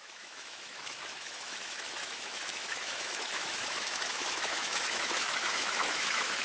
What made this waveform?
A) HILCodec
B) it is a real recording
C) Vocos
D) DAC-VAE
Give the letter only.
D